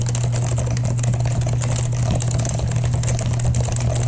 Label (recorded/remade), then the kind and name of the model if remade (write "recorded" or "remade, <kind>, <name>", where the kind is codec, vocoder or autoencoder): recorded